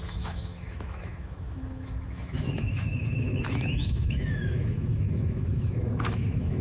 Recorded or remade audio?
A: remade